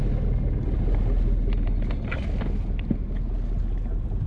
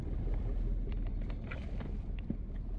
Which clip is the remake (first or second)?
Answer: second